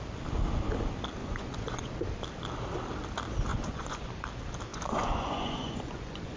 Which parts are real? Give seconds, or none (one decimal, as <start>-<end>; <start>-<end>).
0.0-1.2; 1.9-3.5; 4.1-4.7

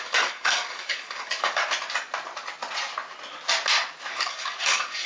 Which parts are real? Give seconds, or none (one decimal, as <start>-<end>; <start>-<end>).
1.6-4.1

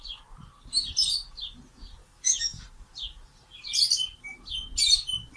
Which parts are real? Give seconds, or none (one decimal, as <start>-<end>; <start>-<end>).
0.0-2.0; 2.6-5.4

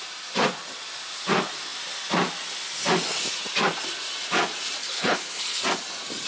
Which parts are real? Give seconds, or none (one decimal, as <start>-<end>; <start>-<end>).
0.0-4.8; 5.6-6.3

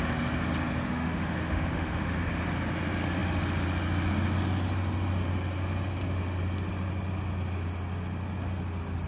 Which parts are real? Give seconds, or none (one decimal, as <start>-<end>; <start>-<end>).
0.0-0.9; 2.3-9.1

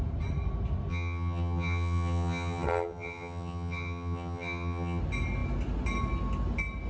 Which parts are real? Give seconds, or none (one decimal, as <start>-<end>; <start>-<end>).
0.0-0.9; 5.0-6.9